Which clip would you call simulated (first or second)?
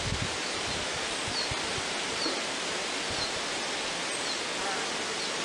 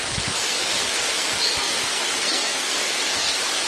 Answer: second